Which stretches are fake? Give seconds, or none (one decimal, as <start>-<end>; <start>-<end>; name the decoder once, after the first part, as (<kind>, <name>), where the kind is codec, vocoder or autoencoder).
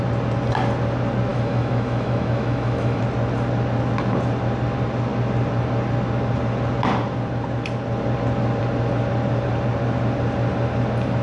1.3-3.0 (autoencoder, DAC-VAE)